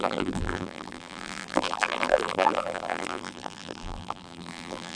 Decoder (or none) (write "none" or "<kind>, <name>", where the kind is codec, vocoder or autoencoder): vocoder, BigVGAN v2